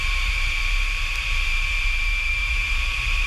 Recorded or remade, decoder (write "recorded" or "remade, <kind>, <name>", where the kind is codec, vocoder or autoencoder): remade, vocoder, BigVGAN v2